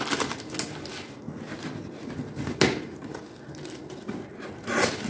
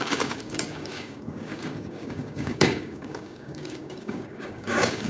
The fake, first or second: second